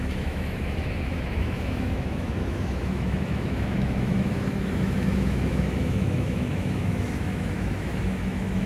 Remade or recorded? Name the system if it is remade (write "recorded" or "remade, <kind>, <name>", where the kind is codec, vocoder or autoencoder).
remade, autoencoder, DAC-VAE